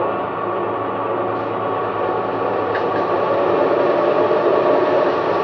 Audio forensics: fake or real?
real